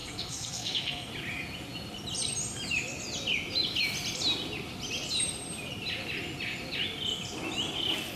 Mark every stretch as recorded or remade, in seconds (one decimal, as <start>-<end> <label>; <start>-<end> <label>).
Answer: 0.0-1.1 remade; 1.1-8.2 recorded